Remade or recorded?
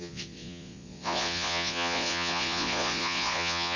remade